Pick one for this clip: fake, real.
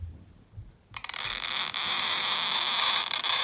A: real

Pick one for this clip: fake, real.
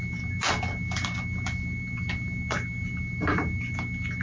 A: real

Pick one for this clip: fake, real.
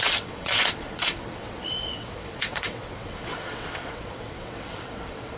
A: fake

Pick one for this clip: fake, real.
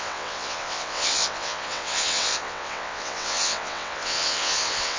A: fake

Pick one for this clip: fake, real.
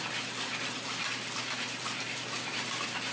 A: real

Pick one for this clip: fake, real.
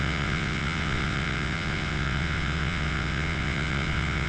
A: fake